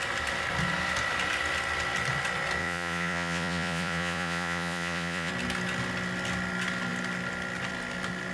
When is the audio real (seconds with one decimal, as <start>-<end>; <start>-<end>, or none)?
0.0-2.6; 5.3-8.3